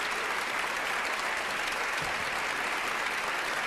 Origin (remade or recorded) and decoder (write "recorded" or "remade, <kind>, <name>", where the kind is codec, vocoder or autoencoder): recorded